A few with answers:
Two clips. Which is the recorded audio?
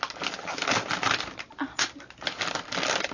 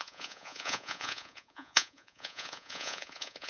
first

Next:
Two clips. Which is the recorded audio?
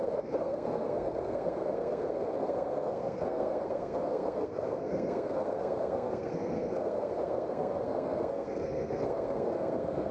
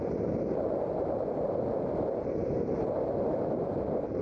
second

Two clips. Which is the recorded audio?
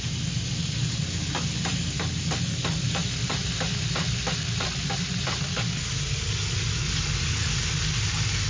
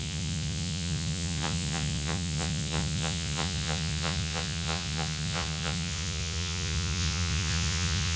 first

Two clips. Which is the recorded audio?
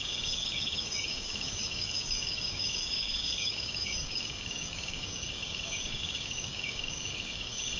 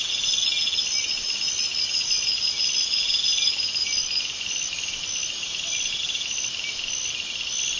second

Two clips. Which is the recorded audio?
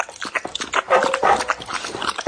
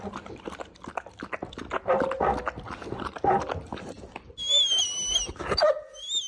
second